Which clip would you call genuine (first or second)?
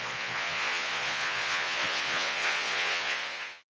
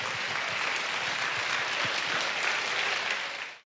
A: second